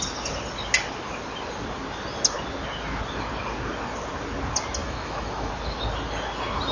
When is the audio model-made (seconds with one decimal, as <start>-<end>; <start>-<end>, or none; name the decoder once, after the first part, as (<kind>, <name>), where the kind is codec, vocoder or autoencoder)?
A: 4.8-5.5 (autoencoder, DAC-VAE)